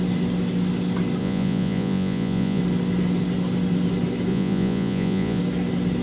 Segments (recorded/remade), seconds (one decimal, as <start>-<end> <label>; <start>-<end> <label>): 0.0-1.2 recorded; 1.2-2.6 remade; 2.6-4.3 recorded; 4.3-5.4 remade; 5.4-6.0 recorded